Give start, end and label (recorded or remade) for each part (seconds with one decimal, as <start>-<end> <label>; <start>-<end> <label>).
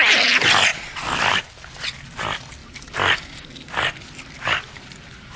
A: 0.0-2.6 remade; 2.6-5.4 recorded